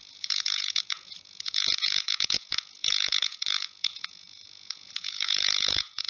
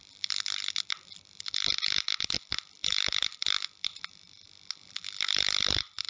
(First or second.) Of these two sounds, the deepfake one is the first